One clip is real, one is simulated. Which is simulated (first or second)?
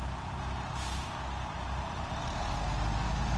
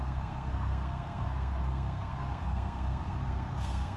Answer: second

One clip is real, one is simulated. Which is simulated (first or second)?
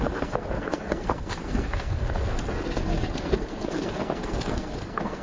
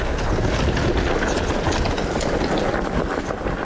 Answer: first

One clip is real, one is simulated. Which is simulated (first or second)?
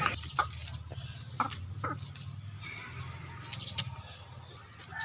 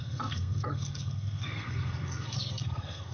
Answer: second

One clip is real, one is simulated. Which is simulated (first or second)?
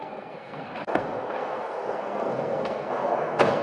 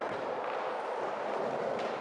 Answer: first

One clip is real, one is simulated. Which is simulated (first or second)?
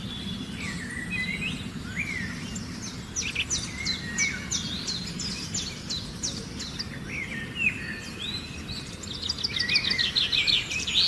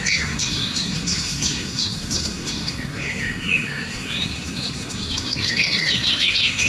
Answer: second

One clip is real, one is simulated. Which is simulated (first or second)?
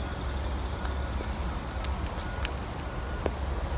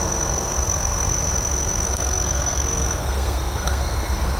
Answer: second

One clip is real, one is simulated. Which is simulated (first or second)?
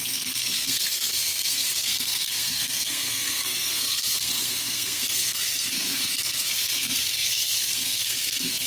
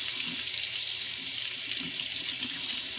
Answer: first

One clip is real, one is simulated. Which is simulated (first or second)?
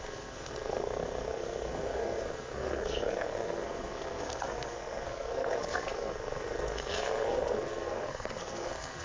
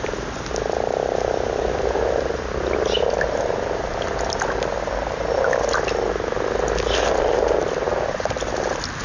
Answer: first